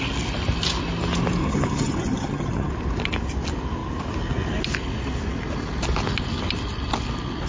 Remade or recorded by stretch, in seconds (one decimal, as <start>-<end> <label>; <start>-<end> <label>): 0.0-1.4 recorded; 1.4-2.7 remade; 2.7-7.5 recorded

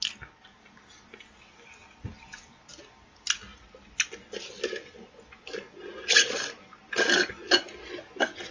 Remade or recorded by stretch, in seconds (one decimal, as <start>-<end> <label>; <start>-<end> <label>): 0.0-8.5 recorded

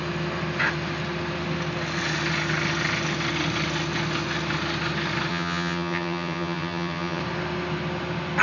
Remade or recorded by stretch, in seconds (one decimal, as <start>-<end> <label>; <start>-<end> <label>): 0.0-5.3 recorded; 5.3-7.2 remade; 7.2-8.4 recorded

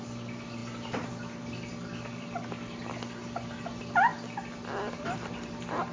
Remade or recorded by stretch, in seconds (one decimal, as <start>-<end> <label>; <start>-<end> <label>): 0.0-5.9 recorded

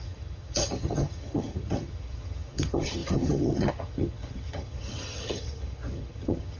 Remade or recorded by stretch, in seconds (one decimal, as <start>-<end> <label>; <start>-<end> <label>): 0.0-6.6 remade

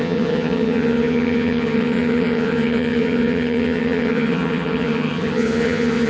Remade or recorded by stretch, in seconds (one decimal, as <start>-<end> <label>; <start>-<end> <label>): 0.0-6.1 remade